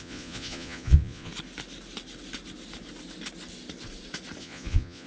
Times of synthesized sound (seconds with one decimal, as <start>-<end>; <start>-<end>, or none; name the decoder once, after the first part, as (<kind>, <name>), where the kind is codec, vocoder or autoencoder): 0.0-1.3 (vocoder, Vocos); 4.4-5.1